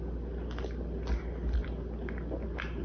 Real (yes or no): yes